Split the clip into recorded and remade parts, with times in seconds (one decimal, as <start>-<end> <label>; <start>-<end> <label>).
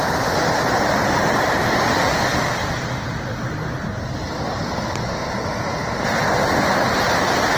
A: 0.0-1.8 remade; 1.8-7.6 recorded